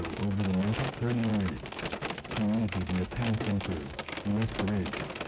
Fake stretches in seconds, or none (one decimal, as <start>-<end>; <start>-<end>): 0.0-1.3; 2.9-4.3